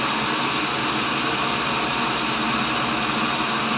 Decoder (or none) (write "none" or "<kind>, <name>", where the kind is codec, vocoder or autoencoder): none